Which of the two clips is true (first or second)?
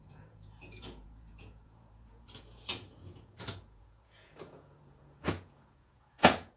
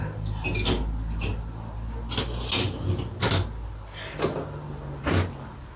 second